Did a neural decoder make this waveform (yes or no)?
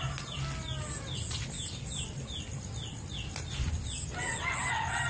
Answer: no